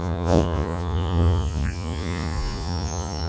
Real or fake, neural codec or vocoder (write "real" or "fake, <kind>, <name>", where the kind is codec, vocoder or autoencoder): fake, vocoder, Vocos